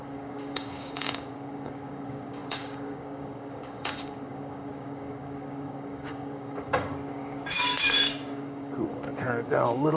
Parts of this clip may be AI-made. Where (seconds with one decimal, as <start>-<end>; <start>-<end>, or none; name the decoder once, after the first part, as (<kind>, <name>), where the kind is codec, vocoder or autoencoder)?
0.0-10.0 (codec, DAC)